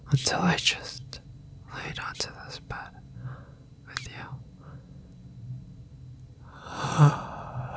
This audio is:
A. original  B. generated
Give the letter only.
A